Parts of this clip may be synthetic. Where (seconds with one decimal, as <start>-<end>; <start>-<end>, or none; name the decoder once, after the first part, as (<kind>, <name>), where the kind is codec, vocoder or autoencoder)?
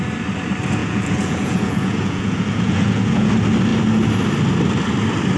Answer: 0.8-3.3 (vocoder, Vocos)